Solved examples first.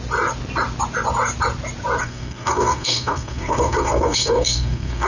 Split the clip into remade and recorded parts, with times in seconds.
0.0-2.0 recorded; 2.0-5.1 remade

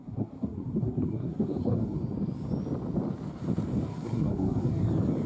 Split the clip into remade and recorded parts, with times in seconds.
0.0-2.0 remade; 2.0-3.9 recorded; 3.9-4.7 remade; 4.7-5.3 recorded

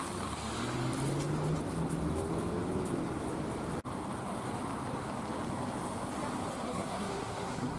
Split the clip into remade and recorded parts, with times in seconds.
0.0-6.5 recorded; 6.5-7.8 remade

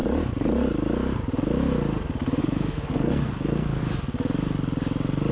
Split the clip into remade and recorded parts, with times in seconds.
0.0-2.4 recorded; 2.4-3.8 remade; 3.8-5.3 recorded

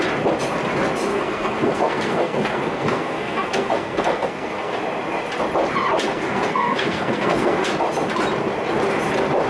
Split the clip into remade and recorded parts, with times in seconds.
0.0-1.1 recorded; 1.1-4.8 remade; 4.8-6.1 recorded; 6.1-7.7 remade; 7.7-9.5 recorded

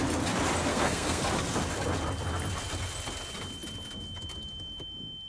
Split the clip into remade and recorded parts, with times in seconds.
0.0-0.7 recorded; 0.7-1.2 remade; 1.2-5.3 recorded